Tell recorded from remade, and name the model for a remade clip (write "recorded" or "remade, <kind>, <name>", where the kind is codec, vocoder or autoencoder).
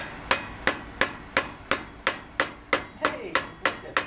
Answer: recorded